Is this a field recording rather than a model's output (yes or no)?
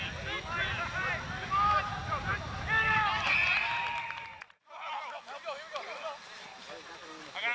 yes